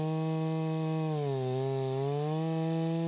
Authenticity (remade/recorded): recorded